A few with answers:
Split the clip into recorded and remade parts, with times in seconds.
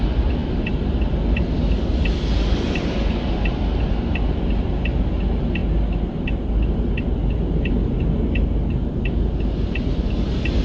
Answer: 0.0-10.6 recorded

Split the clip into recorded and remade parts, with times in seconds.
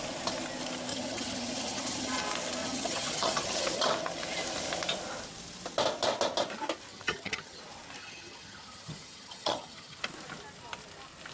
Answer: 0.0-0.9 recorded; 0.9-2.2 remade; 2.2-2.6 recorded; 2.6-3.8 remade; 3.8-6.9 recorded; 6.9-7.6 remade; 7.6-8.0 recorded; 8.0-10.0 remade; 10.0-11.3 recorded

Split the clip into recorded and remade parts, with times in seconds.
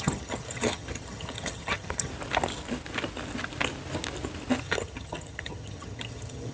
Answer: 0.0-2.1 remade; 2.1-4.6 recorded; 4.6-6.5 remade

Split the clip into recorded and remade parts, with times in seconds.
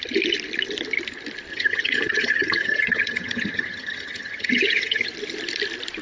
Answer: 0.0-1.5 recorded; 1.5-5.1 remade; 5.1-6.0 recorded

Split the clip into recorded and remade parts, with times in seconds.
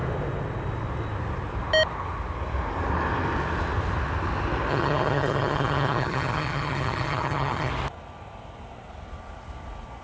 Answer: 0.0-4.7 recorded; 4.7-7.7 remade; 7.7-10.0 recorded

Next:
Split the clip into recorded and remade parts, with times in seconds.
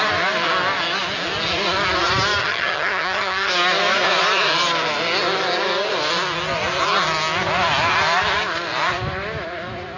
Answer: 0.0-2.4 recorded; 2.4-3.5 remade; 3.5-10.0 recorded